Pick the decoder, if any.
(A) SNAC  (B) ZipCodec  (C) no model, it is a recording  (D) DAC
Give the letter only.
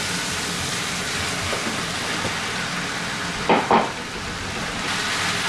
C